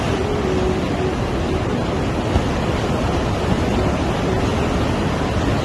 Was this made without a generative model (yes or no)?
yes